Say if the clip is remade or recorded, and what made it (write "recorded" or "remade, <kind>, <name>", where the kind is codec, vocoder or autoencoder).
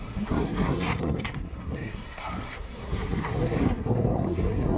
remade, codec, SNAC